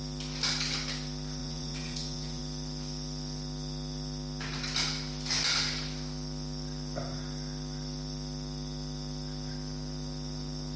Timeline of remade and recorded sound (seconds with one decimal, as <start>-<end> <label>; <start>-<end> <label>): 0.0-1.4 recorded; 1.4-2.4 remade; 2.4-10.8 recorded

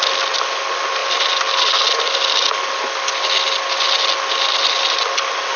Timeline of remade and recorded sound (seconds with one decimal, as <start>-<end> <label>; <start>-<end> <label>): 0.0-5.6 recorded